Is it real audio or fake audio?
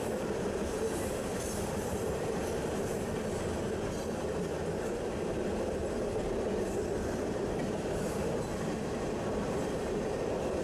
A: fake